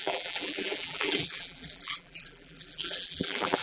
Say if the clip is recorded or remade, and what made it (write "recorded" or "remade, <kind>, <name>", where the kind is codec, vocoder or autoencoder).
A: remade, vocoder, BigVGAN v2